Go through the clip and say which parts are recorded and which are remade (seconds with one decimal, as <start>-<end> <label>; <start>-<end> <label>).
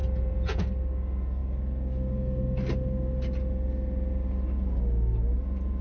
0.0-0.6 remade; 0.6-5.8 recorded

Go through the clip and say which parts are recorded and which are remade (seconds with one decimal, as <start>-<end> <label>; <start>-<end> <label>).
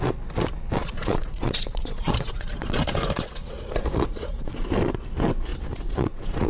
0.0-0.8 recorded; 0.8-4.7 remade; 4.7-5.5 recorded; 5.5-6.5 remade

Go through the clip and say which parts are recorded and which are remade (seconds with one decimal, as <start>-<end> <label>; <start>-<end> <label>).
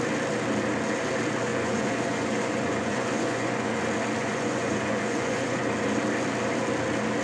0.0-1.5 recorded; 1.5-3.8 remade; 3.8-4.2 recorded; 4.2-5.6 remade; 5.6-7.2 recorded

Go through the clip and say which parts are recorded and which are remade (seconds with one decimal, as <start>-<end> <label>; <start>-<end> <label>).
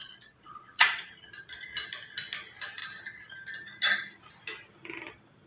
0.0-1.0 remade; 1.0-5.5 recorded